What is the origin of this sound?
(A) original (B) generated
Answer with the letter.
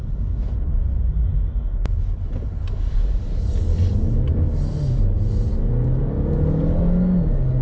A